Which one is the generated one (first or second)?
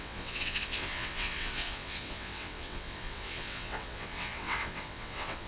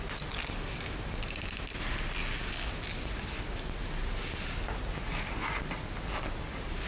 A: first